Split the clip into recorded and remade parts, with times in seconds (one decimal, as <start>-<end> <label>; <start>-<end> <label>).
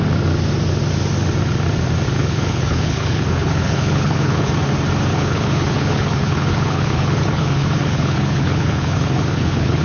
0.0-2.2 recorded; 2.2-4.5 remade; 4.5-5.1 recorded; 5.1-9.8 remade